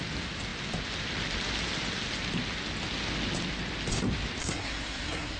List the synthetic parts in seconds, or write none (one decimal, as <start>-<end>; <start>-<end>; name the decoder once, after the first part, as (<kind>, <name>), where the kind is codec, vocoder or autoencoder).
4.4-5.4 (codec, SNAC)